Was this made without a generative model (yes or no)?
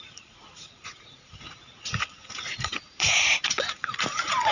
no